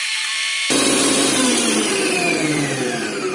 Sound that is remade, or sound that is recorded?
remade